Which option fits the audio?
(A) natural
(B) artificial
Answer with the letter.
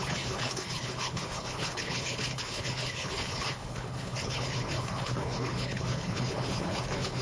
B